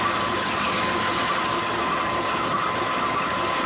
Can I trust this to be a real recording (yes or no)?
yes